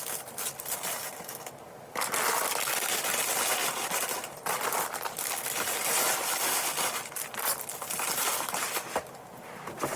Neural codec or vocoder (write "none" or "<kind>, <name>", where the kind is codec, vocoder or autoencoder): none